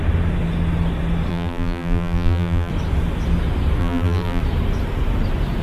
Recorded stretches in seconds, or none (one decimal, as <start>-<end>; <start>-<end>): 0.0-1.3; 2.7-3.8; 4.4-5.6